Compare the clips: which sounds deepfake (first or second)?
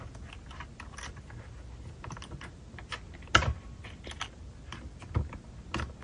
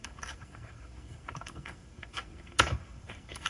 second